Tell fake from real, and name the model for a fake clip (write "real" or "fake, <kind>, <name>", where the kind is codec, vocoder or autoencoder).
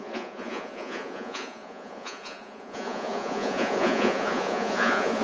fake, vocoder, Vocos